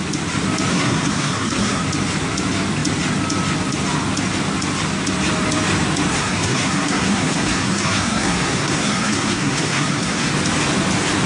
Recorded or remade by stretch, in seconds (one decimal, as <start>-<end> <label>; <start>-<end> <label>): 0.0-0.7 recorded; 0.7-1.8 remade; 1.8-6.1 recorded; 6.1-10.3 remade; 10.3-11.3 recorded